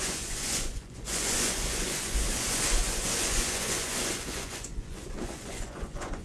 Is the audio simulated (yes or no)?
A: yes